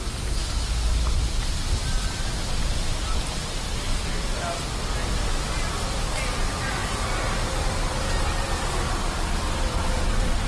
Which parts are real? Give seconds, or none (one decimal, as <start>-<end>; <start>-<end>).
0.0-10.5